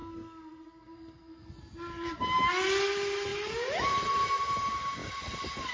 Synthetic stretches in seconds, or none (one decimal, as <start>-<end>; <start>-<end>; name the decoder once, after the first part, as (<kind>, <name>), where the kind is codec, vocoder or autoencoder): 0.0-1.6 (codec, SNAC)